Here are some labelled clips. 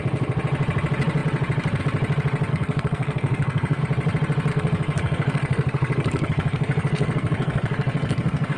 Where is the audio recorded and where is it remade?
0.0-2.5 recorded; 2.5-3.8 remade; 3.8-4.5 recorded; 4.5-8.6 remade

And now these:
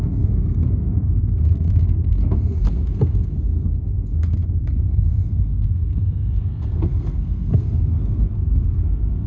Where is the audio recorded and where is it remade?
0.0-9.3 remade

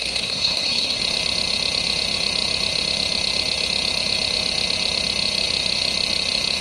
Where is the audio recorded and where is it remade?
0.0-1.0 remade; 1.0-6.6 recorded

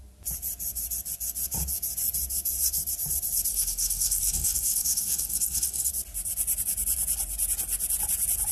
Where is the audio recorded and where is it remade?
0.0-3.5 recorded; 3.5-5.9 remade; 5.9-8.5 recorded

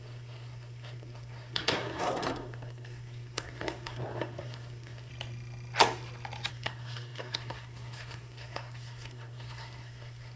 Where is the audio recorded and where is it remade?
0.0-5.1 remade; 5.1-6.5 recorded; 6.5-10.4 remade

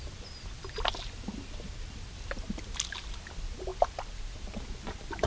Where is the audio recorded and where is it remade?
0.0-5.3 recorded

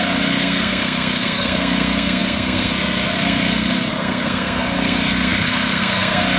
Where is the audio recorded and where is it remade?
0.0-6.4 remade